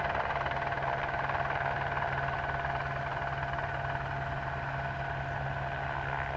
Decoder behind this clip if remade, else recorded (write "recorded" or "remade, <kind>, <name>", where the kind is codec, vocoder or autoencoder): recorded